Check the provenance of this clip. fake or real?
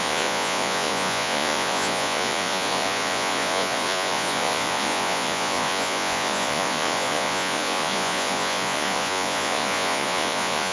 fake